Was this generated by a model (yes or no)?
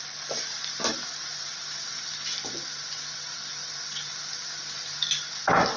no